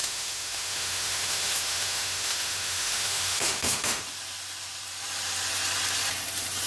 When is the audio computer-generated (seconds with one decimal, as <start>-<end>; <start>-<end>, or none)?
0.0-4.0